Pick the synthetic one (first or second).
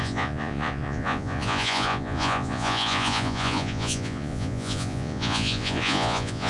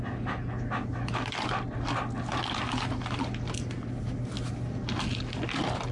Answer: first